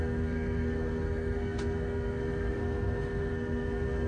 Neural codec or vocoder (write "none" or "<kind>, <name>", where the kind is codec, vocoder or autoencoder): codec, SNAC